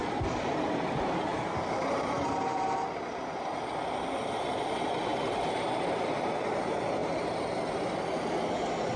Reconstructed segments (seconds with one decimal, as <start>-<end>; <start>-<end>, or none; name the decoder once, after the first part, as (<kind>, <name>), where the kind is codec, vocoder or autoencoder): 1.3-2.3 (vocoder, BigVGAN v2); 5.1-6.5; 7.0-7.7